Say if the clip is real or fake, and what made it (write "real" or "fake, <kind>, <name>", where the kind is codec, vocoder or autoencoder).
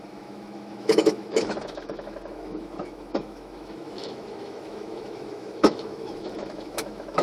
fake, autoencoder, DAC-VAE